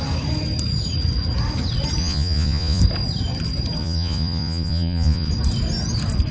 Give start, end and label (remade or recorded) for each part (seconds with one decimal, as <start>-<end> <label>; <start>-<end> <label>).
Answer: 0.0-2.0 recorded; 2.0-2.8 remade; 2.8-3.8 recorded; 3.8-5.3 remade; 5.3-6.3 recorded